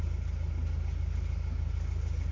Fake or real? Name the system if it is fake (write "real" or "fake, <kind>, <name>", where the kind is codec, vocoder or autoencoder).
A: real